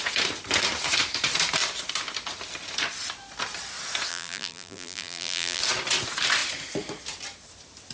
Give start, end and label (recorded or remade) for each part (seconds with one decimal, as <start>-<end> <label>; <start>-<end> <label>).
0.0-4.1 recorded; 4.1-5.6 remade; 5.6-7.9 recorded